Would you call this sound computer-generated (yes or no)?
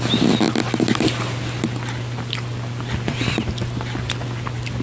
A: no